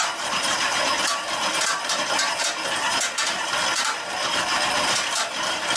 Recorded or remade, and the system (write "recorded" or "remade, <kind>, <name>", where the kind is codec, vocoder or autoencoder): remade, vocoder, BigVGAN v2